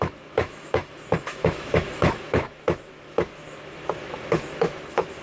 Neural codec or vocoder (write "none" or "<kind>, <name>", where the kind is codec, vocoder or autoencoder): autoencoder, DAC-VAE